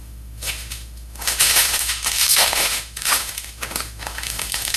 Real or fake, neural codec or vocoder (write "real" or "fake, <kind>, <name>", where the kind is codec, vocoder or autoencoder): fake, autoencoder, DAC-VAE